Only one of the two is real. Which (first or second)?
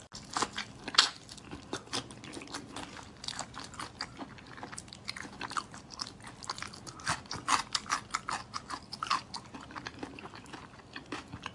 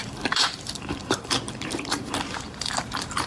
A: first